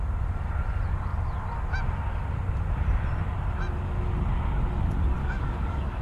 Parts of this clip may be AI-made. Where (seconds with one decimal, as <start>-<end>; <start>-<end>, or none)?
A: 5.2-6.0